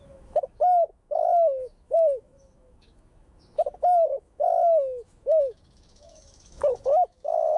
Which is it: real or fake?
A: fake